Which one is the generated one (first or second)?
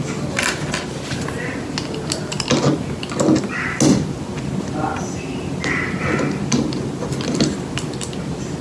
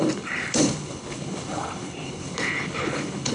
second